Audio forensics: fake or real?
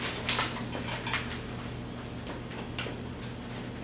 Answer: real